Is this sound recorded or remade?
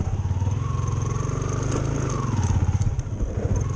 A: recorded